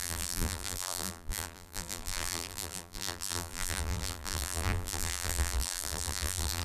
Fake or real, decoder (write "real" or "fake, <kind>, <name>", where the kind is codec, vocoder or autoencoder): fake, vocoder, BigVGAN v2